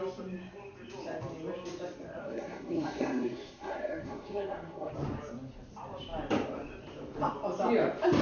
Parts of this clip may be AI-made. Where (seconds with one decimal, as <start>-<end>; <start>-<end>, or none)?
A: 2.2-4.9